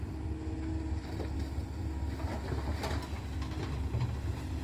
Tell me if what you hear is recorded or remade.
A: recorded